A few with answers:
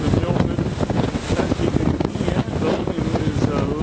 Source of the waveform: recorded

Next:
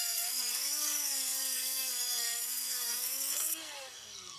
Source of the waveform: remade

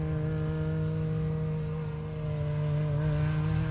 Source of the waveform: recorded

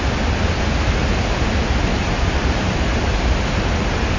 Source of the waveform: recorded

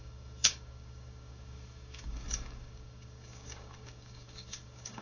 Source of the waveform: remade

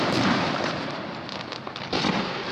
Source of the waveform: recorded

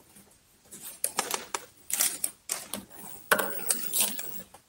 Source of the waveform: recorded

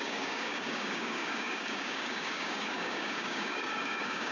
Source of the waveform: remade